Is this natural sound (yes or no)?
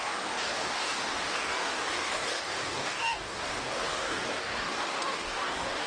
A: no